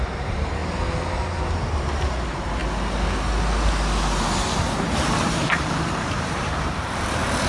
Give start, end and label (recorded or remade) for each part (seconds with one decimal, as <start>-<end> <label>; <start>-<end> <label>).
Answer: 0.0-0.6 remade; 0.6-1.4 recorded; 1.4-2.6 remade; 2.6-4.7 recorded; 4.7-7.5 remade

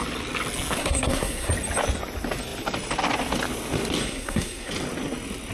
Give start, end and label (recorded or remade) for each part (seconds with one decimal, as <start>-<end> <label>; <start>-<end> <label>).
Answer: 0.0-0.8 recorded; 0.8-1.5 remade; 1.5-4.0 recorded; 4.0-4.7 remade; 4.7-5.5 recorded

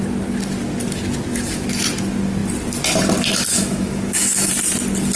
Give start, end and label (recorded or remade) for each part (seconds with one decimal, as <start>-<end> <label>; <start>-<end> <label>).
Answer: 0.0-1.3 recorded; 1.3-1.8 remade; 1.8-3.5 recorded; 3.5-4.5 remade; 4.5-5.2 recorded

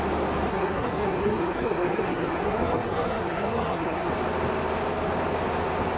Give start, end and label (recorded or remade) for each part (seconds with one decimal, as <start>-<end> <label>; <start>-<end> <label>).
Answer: 0.0-0.5 recorded; 0.5-4.1 remade; 4.1-6.0 recorded